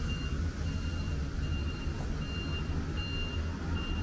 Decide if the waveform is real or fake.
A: real